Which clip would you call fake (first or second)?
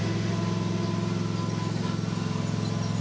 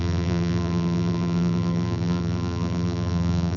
second